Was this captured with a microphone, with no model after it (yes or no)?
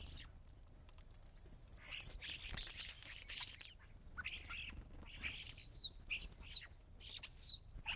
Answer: yes